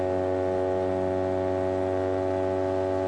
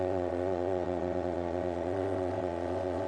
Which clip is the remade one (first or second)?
second